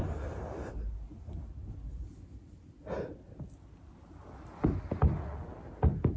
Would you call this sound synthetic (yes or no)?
no